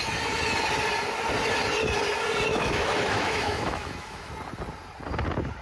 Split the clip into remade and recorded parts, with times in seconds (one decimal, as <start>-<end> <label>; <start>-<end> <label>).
0.0-2.5 recorded; 2.5-4.3 remade; 4.3-5.6 recorded